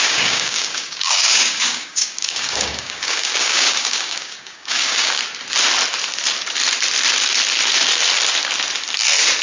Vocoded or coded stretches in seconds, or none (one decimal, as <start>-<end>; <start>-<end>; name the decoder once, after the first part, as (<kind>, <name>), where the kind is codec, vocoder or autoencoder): 0.0-5.2 (codec, DAC)